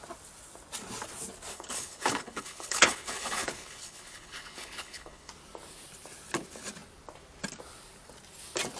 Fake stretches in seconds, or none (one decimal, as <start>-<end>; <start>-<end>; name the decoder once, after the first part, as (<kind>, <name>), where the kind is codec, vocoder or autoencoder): 1.5-5.3 (codec, HILCodec)